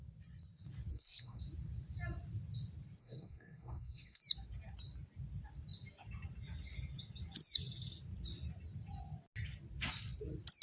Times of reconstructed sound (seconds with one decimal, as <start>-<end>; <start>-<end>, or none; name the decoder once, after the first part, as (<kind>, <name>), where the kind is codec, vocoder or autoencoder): 0.9-1.4 (codec, SNAC); 3.0-4.2